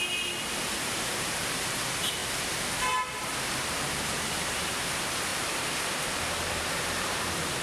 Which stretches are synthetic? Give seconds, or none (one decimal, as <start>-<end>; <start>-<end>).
0.0-2.2; 3.4-7.6

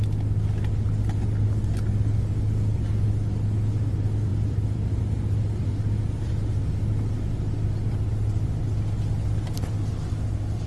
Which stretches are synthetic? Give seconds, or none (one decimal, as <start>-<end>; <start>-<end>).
4.3-5.0

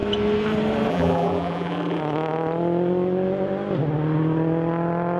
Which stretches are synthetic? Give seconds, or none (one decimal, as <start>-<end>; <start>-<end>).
0.9-2.0